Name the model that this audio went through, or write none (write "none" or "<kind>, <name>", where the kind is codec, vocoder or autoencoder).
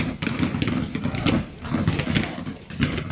none